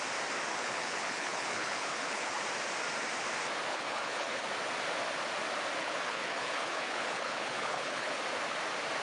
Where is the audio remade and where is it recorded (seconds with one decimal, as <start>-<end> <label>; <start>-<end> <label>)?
0.0-0.5 recorded; 0.5-2.4 remade; 2.4-3.7 recorded; 3.7-4.4 remade; 4.4-5.8 recorded; 5.8-8.2 remade; 8.2-9.0 recorded